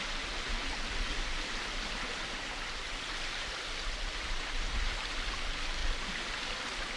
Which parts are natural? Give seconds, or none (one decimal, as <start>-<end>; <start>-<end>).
0.0-7.0